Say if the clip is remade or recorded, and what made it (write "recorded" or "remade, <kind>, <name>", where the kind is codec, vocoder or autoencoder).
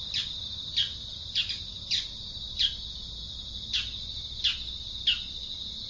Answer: recorded